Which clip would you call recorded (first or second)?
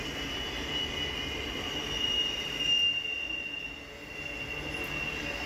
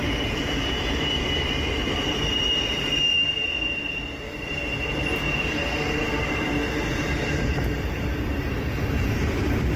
first